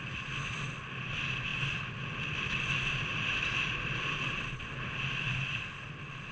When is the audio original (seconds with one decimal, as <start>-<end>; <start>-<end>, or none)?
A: 0.0-6.3